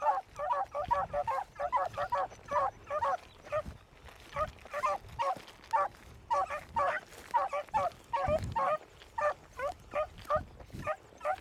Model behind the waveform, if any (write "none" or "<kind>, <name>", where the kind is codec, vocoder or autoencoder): none